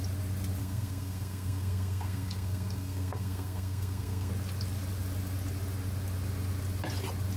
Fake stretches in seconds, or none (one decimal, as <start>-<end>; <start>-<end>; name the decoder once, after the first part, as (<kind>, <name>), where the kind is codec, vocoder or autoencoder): 0.6-4.3 (codec, SNAC)

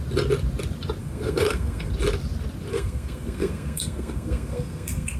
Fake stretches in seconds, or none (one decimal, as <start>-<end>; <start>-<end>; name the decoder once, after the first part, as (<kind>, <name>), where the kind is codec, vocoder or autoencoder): 1.0-1.9 (codec, SNAC); 2.7-5.2